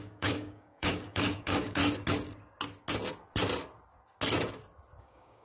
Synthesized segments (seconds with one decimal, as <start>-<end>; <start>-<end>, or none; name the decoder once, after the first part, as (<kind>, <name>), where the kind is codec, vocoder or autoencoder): 0.0-1.8 (codec, DAC); 5.0-5.4